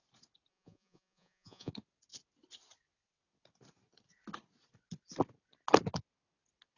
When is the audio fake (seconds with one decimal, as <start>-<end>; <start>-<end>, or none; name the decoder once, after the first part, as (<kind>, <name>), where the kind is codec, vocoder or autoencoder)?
0.5-1.7 (vocoder, Vocos)